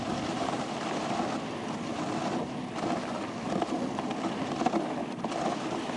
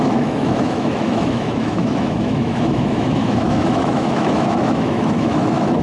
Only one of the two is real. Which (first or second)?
first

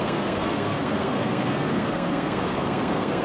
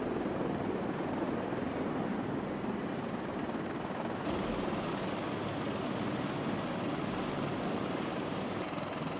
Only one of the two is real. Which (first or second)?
second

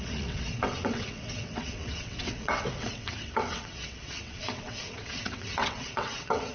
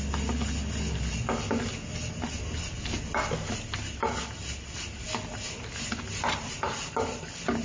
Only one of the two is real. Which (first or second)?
second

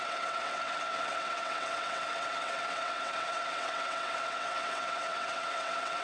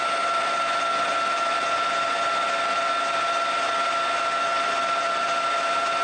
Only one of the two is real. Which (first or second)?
second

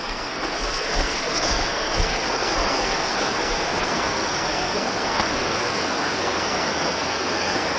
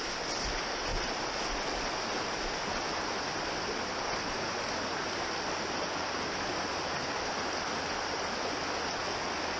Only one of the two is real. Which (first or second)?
second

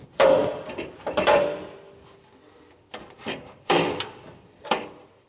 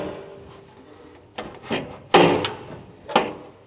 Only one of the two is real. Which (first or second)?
second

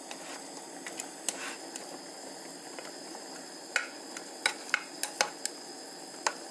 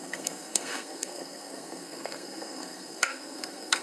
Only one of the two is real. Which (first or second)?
first